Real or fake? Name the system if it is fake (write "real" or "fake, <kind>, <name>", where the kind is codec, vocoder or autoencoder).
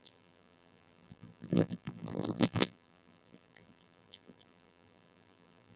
fake, vocoder, BigVGAN v2